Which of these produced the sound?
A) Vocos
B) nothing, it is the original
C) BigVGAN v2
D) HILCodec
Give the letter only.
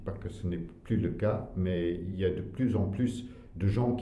C